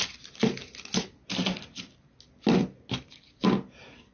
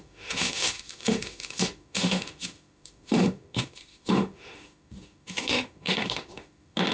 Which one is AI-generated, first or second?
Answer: second